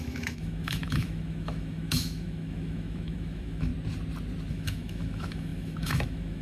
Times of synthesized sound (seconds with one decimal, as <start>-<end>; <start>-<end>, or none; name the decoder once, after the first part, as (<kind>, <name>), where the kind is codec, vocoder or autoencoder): 0.0-3.7 (autoencoder, DAC-VAE); 4.5-6.4

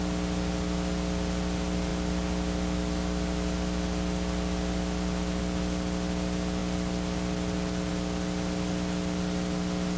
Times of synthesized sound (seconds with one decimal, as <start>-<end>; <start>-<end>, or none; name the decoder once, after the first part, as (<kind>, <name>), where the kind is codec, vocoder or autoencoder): none

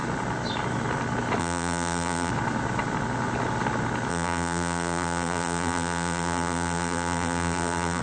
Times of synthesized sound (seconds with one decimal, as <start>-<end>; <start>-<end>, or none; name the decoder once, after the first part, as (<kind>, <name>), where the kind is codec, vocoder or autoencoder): 1.4-2.3 (vocoder, BigVGAN v2); 4.1-8.0

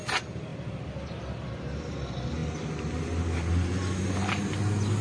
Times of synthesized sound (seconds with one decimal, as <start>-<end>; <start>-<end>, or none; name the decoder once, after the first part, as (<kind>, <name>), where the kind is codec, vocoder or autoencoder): none

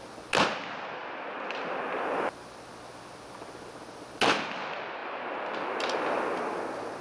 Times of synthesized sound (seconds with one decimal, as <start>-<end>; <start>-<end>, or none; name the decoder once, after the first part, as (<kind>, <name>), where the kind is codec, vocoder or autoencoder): none